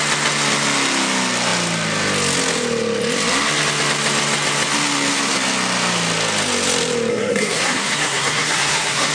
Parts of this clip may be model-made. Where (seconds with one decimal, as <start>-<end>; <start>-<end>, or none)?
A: 7.1-9.1